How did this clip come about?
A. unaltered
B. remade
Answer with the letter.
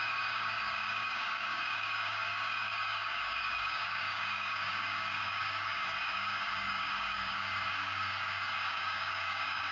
B